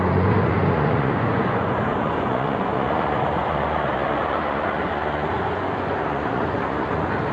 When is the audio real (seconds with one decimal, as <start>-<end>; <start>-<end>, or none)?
none